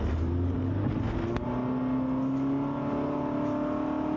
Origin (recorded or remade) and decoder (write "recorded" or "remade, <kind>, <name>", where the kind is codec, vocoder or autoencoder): recorded